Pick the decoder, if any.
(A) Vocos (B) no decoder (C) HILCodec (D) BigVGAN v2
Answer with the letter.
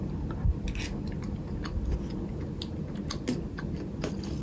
B